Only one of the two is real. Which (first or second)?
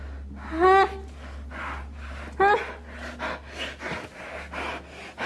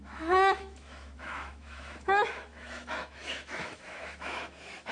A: first